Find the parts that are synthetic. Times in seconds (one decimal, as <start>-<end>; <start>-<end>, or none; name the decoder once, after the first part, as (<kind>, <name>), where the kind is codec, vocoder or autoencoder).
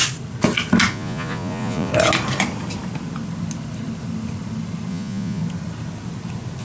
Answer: 0.9-1.9 (vocoder, Vocos); 4.9-5.4